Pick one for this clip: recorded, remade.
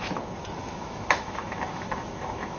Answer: remade